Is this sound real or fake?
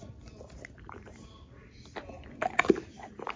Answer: real